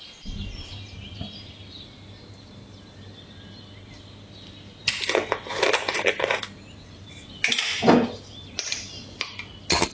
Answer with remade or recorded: recorded